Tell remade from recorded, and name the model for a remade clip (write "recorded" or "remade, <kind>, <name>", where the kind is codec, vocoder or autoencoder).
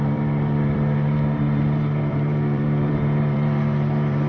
remade, vocoder, BigVGAN v2